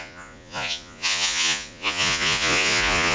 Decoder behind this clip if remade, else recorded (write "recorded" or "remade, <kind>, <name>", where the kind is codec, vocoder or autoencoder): remade, vocoder, Vocos